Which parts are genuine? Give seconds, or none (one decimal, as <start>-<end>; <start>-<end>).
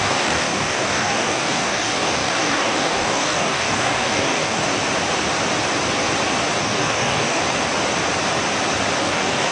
4.6-6.6; 7.4-9.0